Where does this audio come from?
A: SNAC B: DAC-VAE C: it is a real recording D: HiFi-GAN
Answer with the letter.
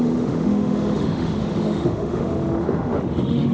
B